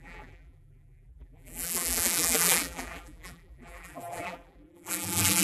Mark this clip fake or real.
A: fake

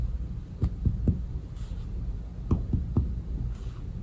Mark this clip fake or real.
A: real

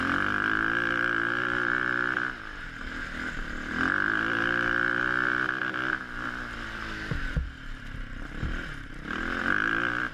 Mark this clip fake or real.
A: fake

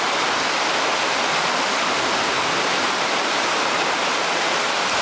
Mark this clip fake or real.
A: real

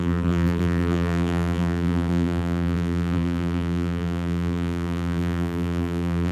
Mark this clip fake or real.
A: fake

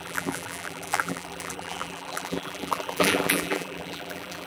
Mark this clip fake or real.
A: fake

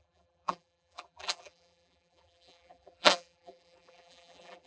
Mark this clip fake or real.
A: fake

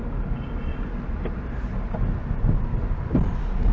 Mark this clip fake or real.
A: real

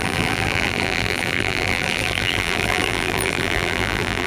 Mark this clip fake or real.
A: fake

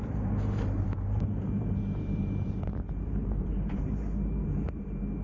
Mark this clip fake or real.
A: fake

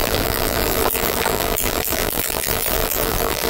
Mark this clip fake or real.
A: fake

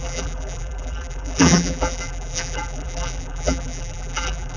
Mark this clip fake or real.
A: fake